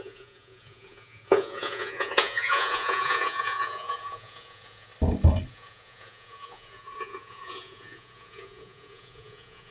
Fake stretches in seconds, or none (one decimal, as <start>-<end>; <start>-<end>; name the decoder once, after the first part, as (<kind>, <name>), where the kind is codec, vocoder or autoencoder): 0.0-4.9 (vocoder, Vocos); 5.5-9.7